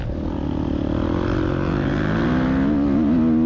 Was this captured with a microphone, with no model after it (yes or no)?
yes